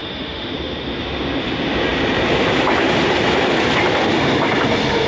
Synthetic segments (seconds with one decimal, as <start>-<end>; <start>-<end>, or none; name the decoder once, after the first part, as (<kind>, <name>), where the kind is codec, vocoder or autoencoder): 0.0-0.5 (autoencoder, DAC-VAE)